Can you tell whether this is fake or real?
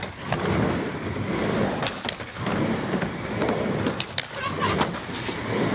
real